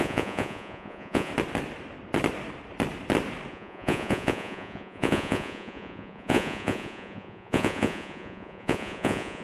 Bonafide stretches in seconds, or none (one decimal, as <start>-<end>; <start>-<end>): 1.3-3.5